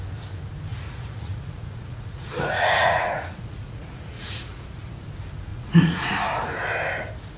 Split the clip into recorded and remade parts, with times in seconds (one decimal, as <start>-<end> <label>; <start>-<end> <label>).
0.0-0.7 recorded; 0.7-5.0 remade; 5.0-5.5 recorded; 5.5-6.1 remade; 6.1-7.4 recorded